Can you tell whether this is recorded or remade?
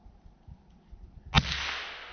recorded